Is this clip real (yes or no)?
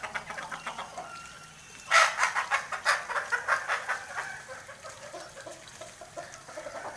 yes